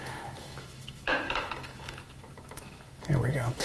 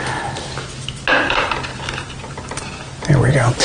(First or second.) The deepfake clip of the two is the first